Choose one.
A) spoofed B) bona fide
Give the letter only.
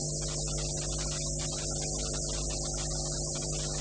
B